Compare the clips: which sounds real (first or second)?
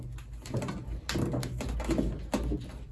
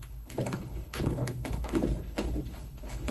first